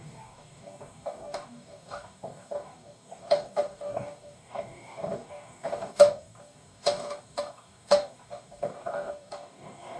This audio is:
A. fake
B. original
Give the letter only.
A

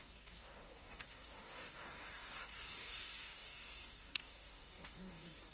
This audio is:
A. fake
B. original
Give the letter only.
A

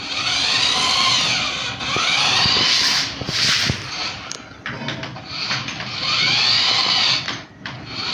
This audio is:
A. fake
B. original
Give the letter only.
B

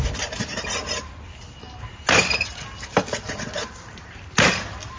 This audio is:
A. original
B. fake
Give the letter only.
A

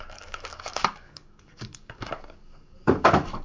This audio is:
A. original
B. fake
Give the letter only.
B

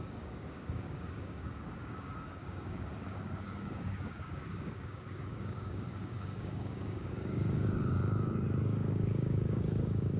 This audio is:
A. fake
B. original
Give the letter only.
A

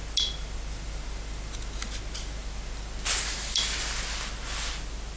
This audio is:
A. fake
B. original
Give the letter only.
B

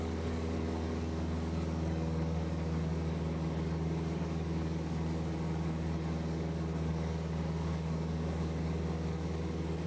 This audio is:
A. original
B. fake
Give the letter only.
B